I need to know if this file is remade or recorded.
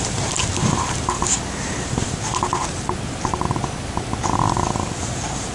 recorded